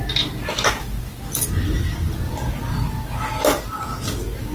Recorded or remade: recorded